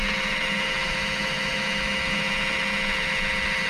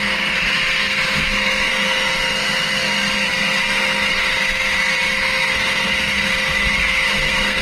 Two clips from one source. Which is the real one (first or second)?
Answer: first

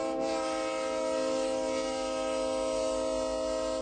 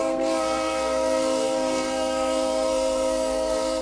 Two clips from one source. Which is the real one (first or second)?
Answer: first